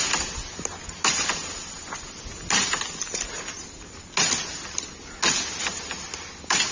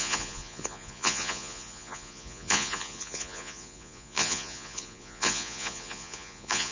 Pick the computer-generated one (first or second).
second